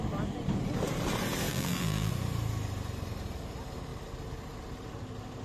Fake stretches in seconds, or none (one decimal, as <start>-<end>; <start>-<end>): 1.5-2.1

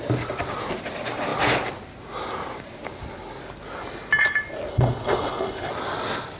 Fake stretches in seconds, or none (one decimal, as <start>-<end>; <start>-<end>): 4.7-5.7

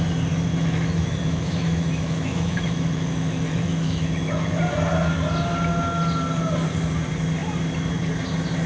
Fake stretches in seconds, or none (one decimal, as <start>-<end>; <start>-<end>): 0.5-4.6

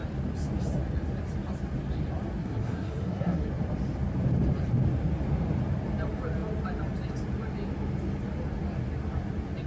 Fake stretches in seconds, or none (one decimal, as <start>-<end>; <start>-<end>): 2.4-3.5

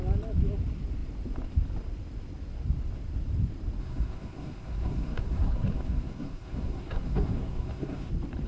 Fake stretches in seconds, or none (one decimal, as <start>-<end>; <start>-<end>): 3.8-8.1

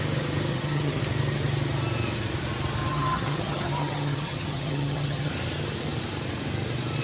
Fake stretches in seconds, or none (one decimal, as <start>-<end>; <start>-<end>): 0.5-1.0; 2.9-5.3

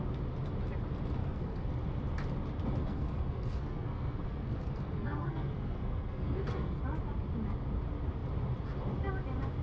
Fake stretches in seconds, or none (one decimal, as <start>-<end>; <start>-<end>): 1.2-1.7; 2.8-6.8